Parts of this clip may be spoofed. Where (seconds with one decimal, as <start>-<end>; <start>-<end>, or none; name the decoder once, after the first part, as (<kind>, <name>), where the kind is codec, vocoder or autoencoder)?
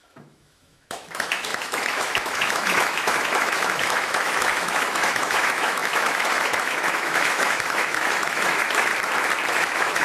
0.0-8.9 (autoencoder, DAC-VAE); 9.5-10.0